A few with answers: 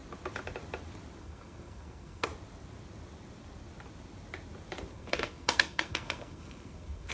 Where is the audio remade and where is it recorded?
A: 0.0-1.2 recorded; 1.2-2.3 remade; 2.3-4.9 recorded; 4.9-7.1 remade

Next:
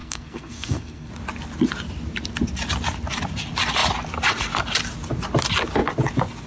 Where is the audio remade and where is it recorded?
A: 0.0-1.1 remade; 1.1-6.5 recorded

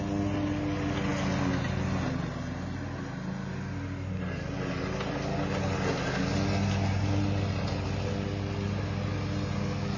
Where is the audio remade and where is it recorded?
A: 0.0-10.0 recorded

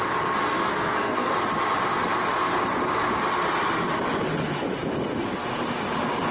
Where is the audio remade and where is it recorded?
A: 0.0-0.6 recorded; 0.6-1.3 remade; 1.3-6.3 recorded

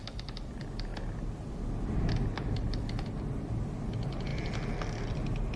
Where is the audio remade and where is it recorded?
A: 0.0-5.6 recorded

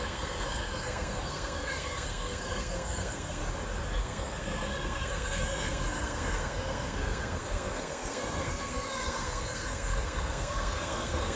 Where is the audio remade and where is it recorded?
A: 0.0-3.4 remade; 3.4-4.0 recorded; 4.0-11.4 remade

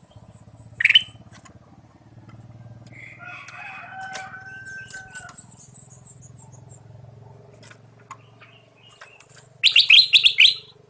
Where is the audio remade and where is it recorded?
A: 0.0-10.9 recorded

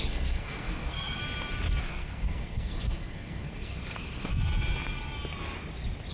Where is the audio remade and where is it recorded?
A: 0.0-1.2 remade; 1.2-1.8 recorded; 1.8-4.3 remade; 4.3-6.1 recorded